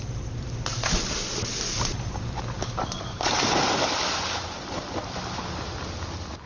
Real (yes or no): yes